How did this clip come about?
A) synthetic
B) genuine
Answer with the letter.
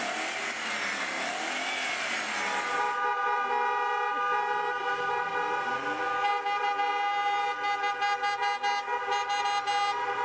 B